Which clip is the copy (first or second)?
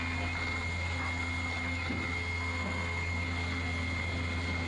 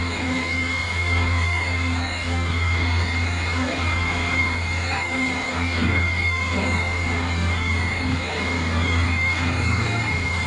second